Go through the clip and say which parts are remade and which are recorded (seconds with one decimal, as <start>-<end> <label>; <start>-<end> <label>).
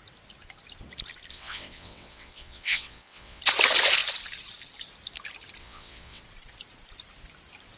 0.0-1.3 recorded; 1.3-3.4 remade; 3.4-5.6 recorded; 5.6-6.2 remade; 6.2-7.8 recorded